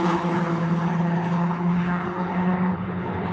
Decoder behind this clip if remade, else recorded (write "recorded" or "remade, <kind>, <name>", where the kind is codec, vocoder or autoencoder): remade, codec, HILCodec